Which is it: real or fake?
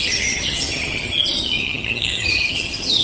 fake